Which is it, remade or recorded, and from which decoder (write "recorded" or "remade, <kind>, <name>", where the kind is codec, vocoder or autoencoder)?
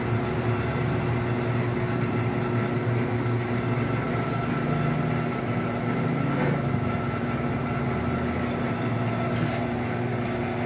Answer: recorded